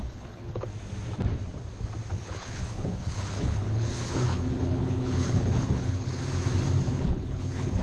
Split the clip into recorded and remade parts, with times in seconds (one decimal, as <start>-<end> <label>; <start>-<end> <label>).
0.0-0.7 remade; 0.7-2.1 recorded; 2.1-6.2 remade; 6.2-6.9 recorded; 6.9-7.8 remade